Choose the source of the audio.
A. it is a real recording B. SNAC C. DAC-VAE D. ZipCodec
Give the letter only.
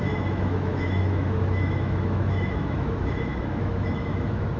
C